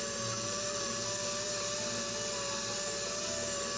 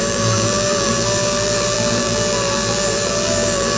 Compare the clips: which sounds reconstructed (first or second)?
second